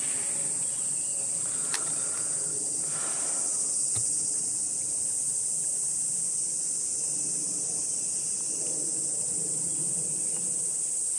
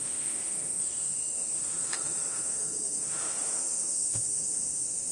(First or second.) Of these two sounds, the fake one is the second